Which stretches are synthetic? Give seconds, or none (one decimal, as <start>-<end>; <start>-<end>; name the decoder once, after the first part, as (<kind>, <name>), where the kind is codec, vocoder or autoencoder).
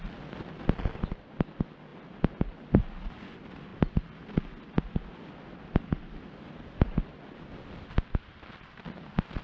none